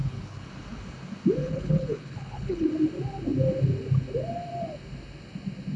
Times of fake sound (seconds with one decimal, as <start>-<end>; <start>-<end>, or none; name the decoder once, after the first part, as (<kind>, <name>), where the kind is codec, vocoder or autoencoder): 0.0-0.5 (codec, HILCodec); 1.4-2.7